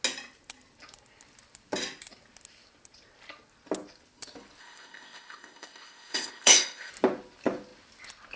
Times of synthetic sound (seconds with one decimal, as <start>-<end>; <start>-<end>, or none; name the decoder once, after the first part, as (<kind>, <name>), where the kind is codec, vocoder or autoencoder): 4.6-6.9 (codec, ZipCodec)